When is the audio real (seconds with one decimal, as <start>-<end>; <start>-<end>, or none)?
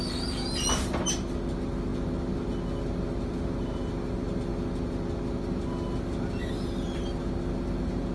0.0-8.1